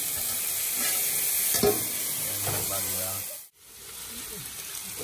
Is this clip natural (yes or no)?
yes